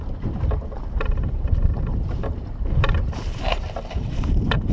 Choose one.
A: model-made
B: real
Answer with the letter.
A